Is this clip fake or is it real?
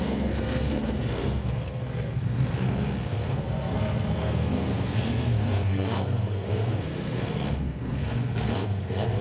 fake